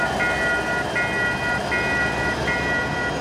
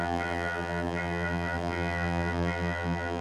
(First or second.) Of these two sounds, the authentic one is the first